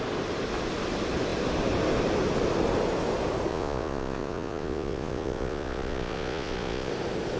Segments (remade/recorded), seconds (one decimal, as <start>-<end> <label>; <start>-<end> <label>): 0.0-3.5 recorded; 3.5-6.9 remade; 6.9-7.4 recorded